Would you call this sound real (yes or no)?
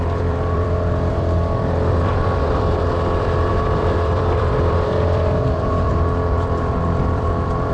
no